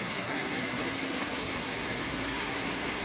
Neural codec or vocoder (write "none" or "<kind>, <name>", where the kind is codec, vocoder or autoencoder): codec, SNAC